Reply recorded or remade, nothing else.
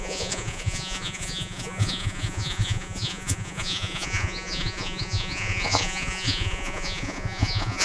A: remade